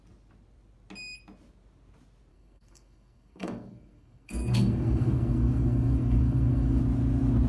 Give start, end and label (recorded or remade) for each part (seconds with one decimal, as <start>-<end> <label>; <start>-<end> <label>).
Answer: 0.0-2.3 recorded; 2.3-6.8 remade; 6.8-7.5 recorded